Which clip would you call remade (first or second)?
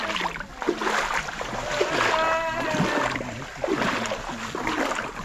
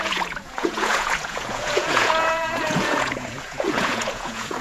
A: second